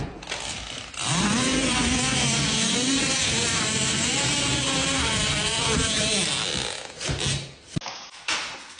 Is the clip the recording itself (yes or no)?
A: yes